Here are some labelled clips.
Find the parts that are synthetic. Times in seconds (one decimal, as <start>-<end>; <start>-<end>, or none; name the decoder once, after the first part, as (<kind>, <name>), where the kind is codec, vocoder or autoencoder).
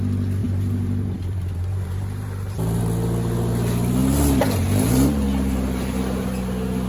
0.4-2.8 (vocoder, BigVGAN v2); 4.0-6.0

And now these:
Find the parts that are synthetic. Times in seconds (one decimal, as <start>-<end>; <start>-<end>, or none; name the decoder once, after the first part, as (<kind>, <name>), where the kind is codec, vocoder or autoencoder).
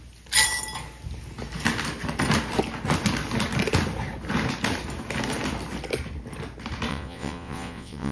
6.9-8.1 (vocoder, WaveNeXt)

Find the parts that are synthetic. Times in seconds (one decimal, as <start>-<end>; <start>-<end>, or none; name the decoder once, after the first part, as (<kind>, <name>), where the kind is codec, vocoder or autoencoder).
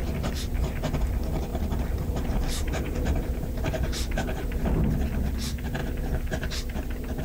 1.5-4.8 (vocoder, BigVGAN v2)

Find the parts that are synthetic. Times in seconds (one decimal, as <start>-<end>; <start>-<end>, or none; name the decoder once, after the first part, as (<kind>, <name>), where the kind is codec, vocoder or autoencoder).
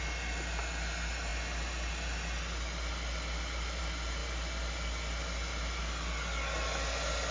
none